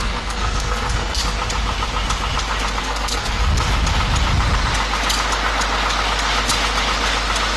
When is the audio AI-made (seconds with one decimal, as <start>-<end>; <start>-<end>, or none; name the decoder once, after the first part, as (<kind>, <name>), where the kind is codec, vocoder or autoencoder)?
0.0-1.2 (codec, SNAC); 2.8-3.5